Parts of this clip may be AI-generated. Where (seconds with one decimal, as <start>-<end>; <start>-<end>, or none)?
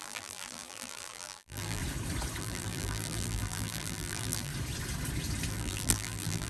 0.0-1.8; 2.4-4.5; 5.5-6.5